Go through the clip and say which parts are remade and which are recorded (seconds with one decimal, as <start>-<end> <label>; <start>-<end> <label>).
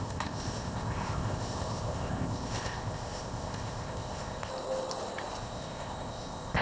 0.0-4.5 remade; 4.5-5.4 recorded; 5.4-6.6 remade